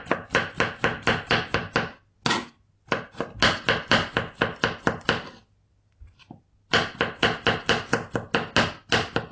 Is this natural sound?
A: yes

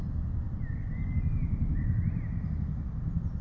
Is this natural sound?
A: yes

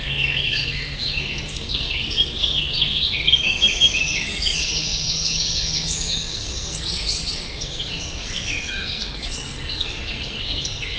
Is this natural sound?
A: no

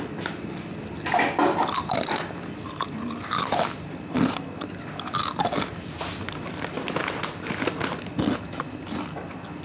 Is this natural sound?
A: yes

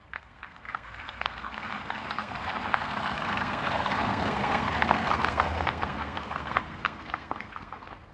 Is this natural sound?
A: no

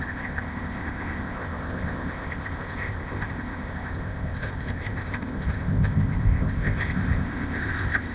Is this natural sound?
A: no